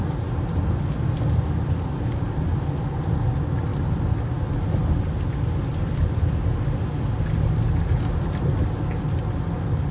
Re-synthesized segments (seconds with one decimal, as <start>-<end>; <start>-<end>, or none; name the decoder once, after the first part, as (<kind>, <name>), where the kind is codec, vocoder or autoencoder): none